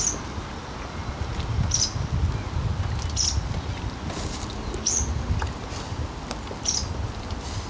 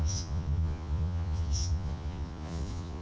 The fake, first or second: second